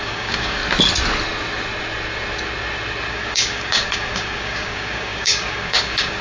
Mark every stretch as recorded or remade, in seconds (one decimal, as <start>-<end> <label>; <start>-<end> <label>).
0.0-0.6 remade; 0.6-3.1 recorded; 3.1-6.2 remade

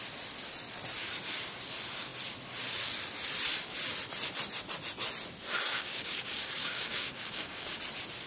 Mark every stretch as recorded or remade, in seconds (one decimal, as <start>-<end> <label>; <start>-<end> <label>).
0.0-5.7 recorded; 5.7-7.8 remade; 7.8-8.3 recorded